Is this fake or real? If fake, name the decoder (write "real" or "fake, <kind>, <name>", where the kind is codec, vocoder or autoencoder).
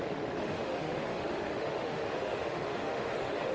fake, autoencoder, DAC-VAE